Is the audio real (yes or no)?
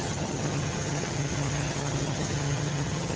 no